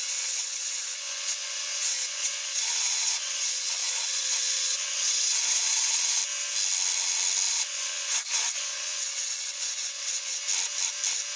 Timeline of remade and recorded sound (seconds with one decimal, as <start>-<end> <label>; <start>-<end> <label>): 0.0-6.2 remade; 6.2-7.5 recorded; 7.5-10.4 remade; 10.4-11.4 recorded